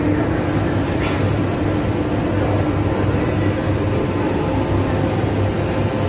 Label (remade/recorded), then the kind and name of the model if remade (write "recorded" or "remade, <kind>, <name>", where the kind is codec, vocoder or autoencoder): recorded